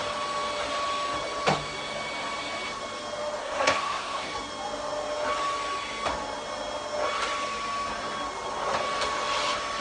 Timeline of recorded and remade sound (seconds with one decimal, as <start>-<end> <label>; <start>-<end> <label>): 0.0-3.4 recorded; 3.4-4.3 remade; 4.3-9.8 recorded

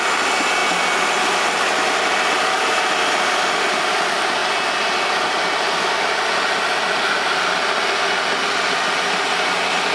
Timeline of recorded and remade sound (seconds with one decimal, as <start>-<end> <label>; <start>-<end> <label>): 0.0-9.9 recorded

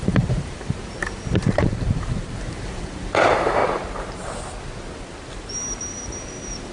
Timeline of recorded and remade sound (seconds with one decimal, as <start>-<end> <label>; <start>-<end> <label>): 0.0-3.6 remade; 3.6-5.5 recorded; 5.5-6.7 remade